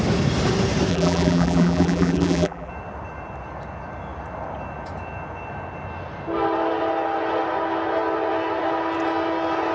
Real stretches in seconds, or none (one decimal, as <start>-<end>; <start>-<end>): 0.0-0.9; 2.7-9.7